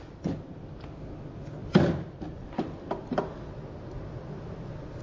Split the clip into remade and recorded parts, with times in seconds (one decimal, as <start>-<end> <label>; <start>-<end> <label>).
0.0-5.0 recorded